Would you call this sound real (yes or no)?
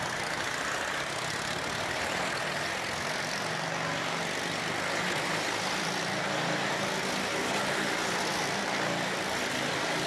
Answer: yes